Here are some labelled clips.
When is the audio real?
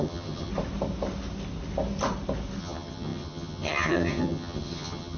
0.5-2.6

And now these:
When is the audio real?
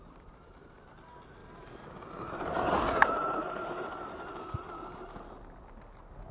0.0-6.3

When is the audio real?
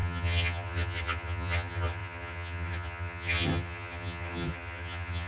none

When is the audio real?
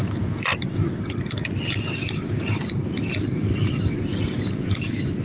0.0-5.2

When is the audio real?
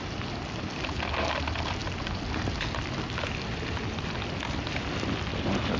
0.0-5.8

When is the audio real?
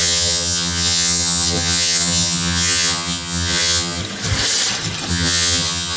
4.0-5.1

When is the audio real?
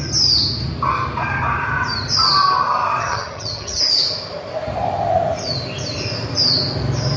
0.0-3.0; 3.8-7.2